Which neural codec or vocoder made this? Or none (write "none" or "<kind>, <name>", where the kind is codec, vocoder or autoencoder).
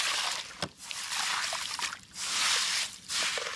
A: none